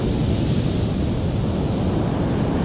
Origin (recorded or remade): recorded